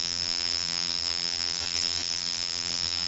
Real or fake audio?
fake